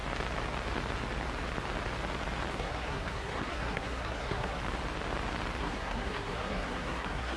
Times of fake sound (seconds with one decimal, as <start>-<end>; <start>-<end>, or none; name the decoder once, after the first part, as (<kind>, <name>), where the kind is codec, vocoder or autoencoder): 2.5-4.6 (codec, SNAC); 5.6-7.4